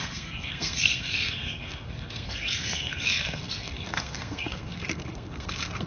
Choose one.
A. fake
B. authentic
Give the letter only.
A